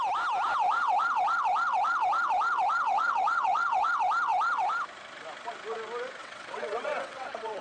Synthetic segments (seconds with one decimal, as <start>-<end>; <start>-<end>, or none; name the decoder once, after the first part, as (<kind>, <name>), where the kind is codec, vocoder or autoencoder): 2.9-3.9 (vocoder, WaveNeXt); 6.2-7.6